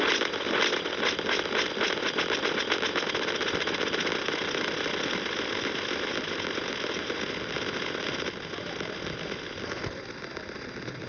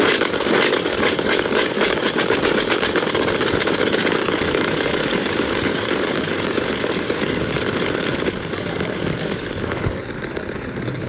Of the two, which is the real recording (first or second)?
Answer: first